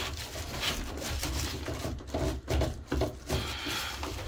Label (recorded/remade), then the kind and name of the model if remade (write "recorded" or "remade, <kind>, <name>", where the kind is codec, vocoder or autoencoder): recorded